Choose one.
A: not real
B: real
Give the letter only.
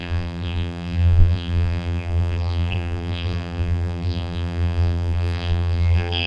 A